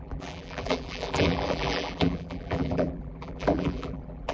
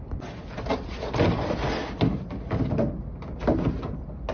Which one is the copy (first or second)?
first